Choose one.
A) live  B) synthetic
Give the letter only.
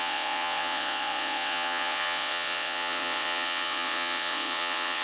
B